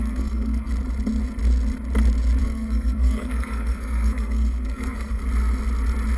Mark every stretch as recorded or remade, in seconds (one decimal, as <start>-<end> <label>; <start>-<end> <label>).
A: 0.0-0.7 remade; 0.7-2.4 recorded; 2.4-5.2 remade; 5.2-6.2 recorded